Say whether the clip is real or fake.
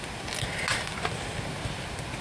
real